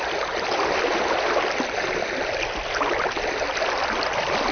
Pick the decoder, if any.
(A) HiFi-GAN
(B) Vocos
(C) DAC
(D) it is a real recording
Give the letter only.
D